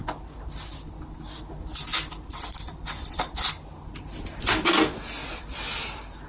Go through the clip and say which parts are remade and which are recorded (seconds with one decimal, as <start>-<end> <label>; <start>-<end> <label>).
0.0-1.9 recorded; 1.9-3.5 remade; 3.5-5.2 recorded; 5.2-5.8 remade; 5.8-6.3 recorded